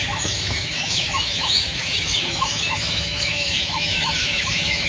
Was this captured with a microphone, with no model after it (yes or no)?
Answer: no